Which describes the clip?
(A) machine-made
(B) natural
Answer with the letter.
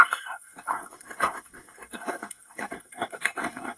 A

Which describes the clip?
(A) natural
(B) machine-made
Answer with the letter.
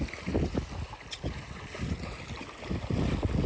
A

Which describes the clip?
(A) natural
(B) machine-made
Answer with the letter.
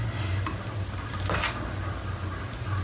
A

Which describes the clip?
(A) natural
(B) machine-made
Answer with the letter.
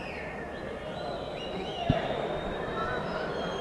A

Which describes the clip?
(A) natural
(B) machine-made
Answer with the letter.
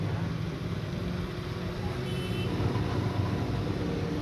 A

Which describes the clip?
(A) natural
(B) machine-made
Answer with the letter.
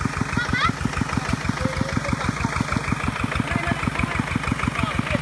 A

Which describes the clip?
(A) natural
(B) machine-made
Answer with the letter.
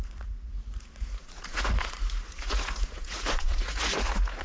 B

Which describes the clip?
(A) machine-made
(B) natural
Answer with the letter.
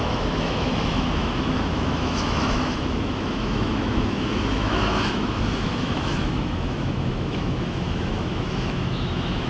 A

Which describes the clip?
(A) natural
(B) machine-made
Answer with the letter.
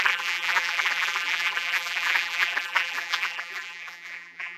B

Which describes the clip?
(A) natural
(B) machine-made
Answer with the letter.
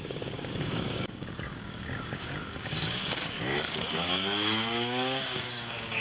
B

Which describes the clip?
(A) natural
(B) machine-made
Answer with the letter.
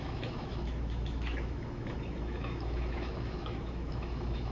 B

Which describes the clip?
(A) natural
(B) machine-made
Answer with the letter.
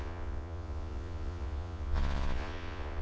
B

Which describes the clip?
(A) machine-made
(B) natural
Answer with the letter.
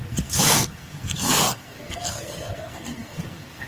A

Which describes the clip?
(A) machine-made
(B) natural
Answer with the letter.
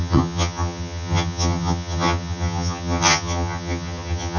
A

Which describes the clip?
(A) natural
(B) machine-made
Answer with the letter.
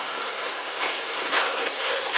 B